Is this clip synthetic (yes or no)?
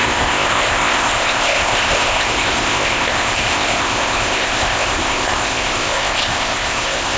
yes